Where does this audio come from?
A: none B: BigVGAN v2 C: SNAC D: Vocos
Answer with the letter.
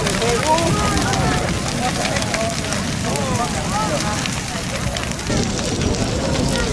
A